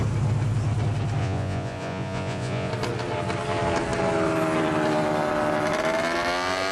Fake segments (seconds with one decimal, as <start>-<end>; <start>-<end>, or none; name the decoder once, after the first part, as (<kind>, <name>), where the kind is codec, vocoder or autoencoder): 1.2-2.7 (vocoder, Vocos)